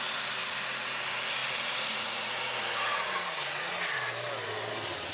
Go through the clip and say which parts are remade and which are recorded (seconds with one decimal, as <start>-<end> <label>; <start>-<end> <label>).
0.0-5.1 recorded